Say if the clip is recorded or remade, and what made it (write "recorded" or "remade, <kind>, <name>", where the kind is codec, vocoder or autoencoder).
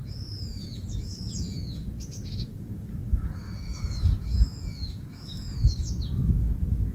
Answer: remade, autoencoder, DAC-VAE